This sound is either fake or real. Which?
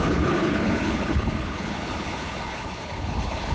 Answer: fake